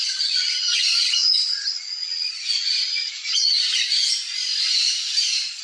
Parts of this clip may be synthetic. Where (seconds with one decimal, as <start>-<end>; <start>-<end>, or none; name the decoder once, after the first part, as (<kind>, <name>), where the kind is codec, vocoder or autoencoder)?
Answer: 0.0-3.8 (vocoder, Vocos)